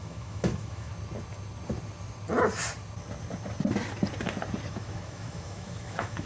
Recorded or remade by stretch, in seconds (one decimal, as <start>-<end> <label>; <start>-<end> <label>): 0.0-0.9 remade; 0.9-4.7 recorded; 4.7-6.3 remade